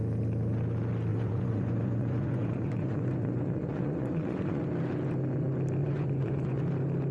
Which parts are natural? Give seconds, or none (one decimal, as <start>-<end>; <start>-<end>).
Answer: 0.0-1.1; 4.6-5.8; 6.6-7.1